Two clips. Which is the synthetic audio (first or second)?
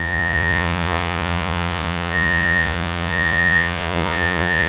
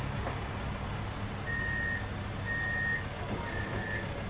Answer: first